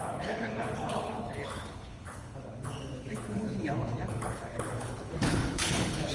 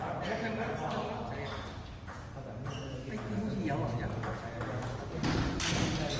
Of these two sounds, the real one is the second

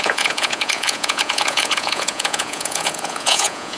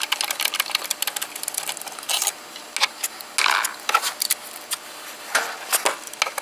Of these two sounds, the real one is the second